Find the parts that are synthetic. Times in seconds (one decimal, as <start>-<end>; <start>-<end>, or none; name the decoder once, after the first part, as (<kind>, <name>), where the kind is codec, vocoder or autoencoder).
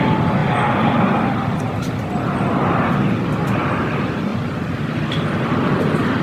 0.4-1.3 (vocoder, BigVGAN v2); 4.3-5.8